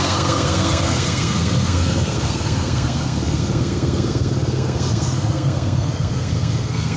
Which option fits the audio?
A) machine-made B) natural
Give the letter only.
A